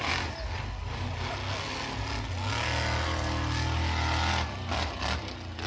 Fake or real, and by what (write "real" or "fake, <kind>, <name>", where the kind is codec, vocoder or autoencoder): real